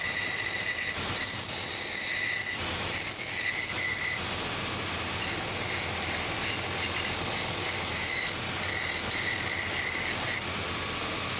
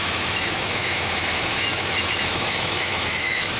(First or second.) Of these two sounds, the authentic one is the first